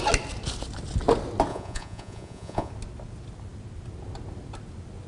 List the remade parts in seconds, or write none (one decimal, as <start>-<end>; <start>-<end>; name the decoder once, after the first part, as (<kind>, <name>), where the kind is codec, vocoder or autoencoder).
1.5-2.7 (vocoder, Vocos)